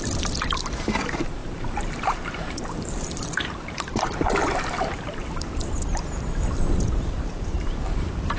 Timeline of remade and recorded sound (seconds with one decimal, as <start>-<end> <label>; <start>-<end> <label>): 0.0-5.9 remade; 5.9-6.6 recorded; 6.6-8.4 remade